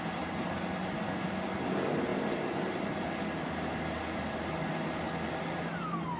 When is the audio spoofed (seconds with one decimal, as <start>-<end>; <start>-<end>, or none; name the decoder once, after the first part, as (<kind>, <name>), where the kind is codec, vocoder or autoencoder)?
none